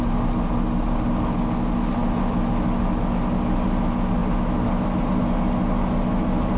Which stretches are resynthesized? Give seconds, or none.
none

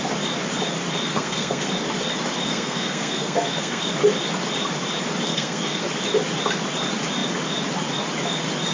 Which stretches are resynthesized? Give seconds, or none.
1.1-1.7 (codec, SNAC); 2.5-3.8; 5.3-5.8

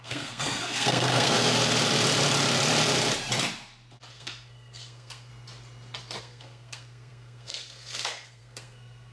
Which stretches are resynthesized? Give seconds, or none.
0.0-1.6 (codec, SNAC); 4.1-5.3; 6.2-9.1

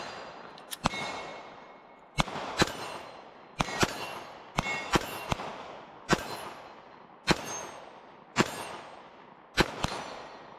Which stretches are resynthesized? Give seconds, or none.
none

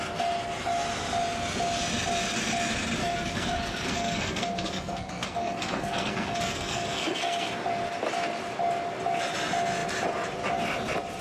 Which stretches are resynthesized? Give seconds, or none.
3.0-7.5 (codec, SNAC)

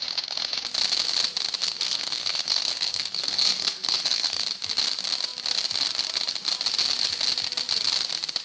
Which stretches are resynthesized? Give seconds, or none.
1.6-4.4 (codec, SNAC)

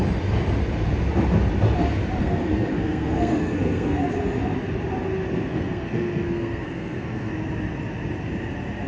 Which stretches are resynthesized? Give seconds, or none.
2.2-4.0 (codec, SNAC); 5.5-7.3

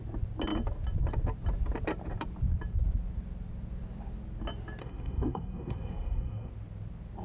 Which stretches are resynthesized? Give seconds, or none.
4.8-6.5 (codec, SNAC)